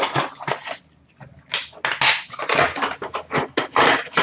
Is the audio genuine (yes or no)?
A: yes